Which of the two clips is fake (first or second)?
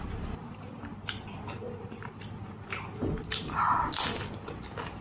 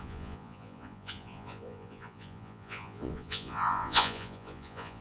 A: second